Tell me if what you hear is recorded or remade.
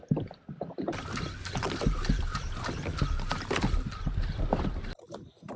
recorded